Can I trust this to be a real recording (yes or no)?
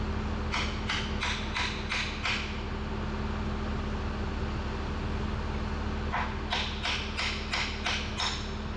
yes